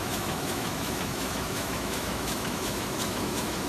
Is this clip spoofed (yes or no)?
yes